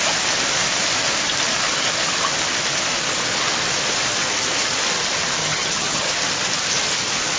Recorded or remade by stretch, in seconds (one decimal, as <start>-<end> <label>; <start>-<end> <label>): 0.0-5.4 recorded; 5.4-6.1 remade; 6.1-7.4 recorded